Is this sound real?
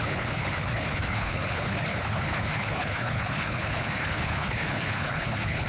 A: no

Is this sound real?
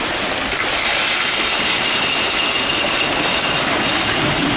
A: yes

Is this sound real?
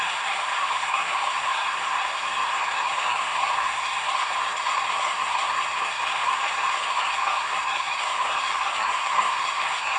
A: no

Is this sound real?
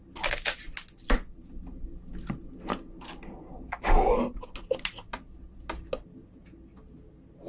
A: yes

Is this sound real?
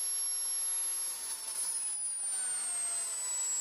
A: yes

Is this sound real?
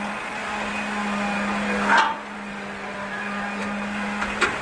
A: yes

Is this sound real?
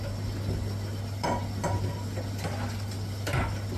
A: yes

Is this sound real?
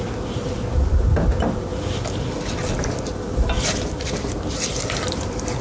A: no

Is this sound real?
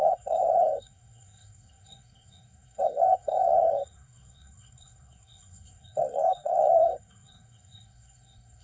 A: no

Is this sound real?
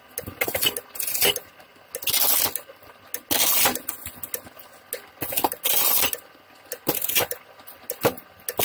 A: yes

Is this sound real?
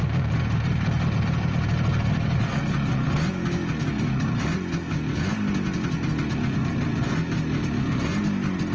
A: yes